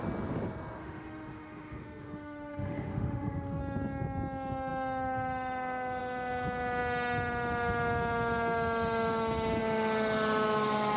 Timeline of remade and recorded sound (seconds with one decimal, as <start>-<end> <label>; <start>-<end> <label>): 0.0-0.8 recorded; 0.8-3.6 remade; 3.6-11.0 recorded